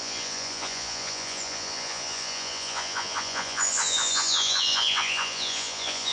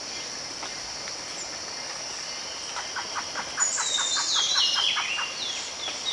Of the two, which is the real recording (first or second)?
second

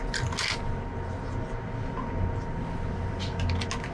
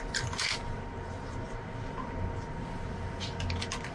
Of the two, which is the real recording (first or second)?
first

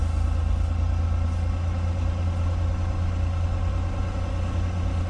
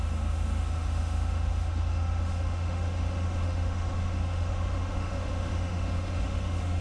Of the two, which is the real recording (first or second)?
first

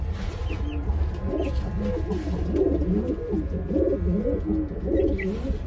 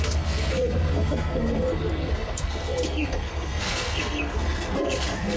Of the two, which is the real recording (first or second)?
first